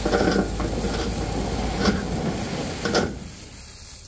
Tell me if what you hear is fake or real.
real